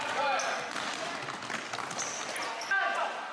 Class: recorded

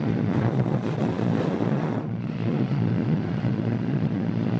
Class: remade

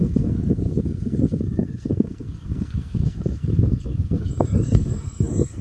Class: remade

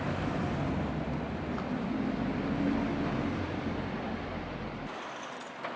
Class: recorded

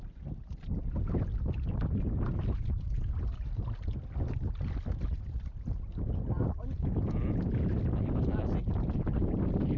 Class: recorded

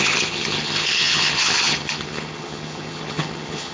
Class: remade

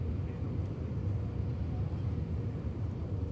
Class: recorded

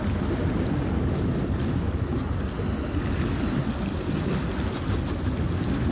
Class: recorded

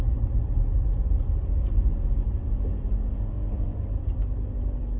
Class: recorded